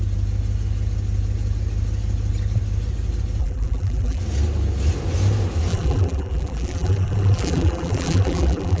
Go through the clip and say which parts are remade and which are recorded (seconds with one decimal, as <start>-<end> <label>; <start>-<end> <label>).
0.0-3.4 recorded; 3.4-4.2 remade; 4.2-5.7 recorded; 5.7-8.8 remade